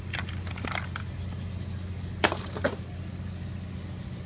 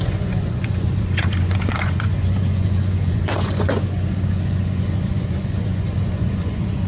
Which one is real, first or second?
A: first